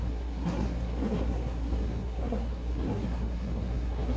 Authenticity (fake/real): fake